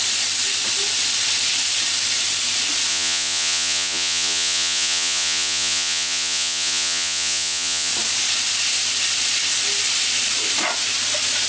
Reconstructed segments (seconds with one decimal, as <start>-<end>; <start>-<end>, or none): 2.9-7.9